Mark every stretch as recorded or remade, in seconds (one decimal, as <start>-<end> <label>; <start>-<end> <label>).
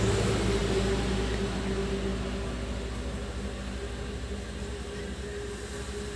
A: 0.0-6.2 recorded